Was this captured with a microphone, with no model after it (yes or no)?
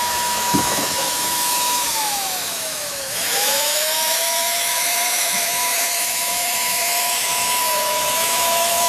no